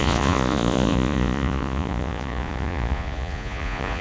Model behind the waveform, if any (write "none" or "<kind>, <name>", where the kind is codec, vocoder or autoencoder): vocoder, Vocos